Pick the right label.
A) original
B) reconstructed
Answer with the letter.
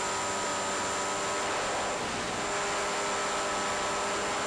A